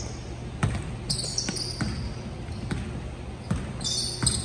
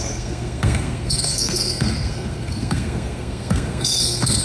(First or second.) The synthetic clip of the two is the second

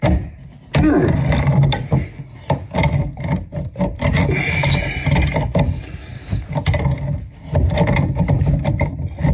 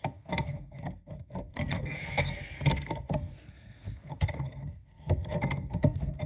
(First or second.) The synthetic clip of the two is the second